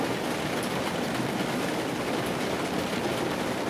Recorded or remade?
recorded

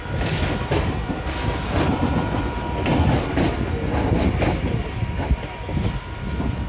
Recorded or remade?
recorded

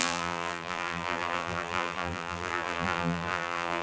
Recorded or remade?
remade